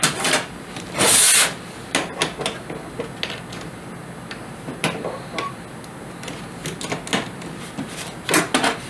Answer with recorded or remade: recorded